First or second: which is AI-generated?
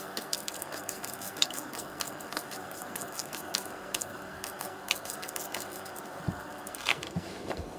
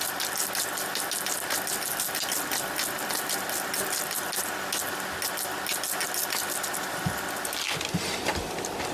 first